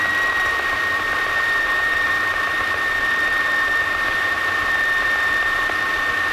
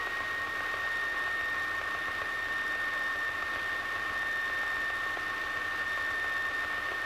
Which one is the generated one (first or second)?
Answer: first